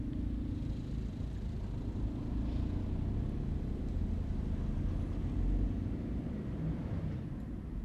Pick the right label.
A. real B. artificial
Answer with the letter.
A